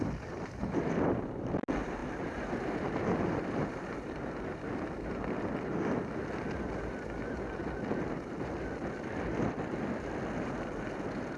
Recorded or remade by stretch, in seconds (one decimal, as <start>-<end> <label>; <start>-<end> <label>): 0.0-11.4 recorded